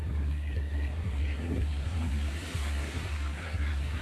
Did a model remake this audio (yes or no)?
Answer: yes